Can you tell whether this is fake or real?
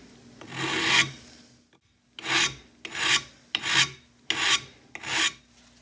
real